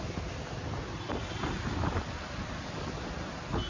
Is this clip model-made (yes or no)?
no